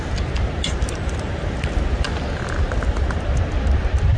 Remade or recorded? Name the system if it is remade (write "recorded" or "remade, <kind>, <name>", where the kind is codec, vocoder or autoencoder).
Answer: recorded